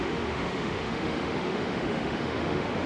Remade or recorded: remade